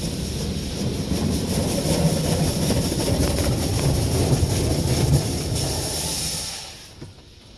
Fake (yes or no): no